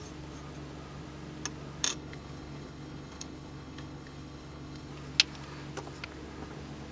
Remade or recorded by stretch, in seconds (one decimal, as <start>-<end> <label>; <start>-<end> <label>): 0.0-1.9 recorded; 1.9-4.9 remade; 4.9-6.9 recorded